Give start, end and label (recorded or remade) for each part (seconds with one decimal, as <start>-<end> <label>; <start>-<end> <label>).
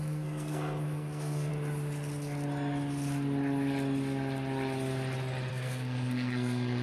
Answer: 0.0-1.5 remade; 1.5-5.5 recorded; 5.5-6.8 remade